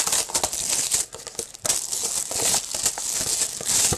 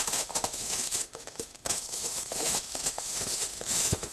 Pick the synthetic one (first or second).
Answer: second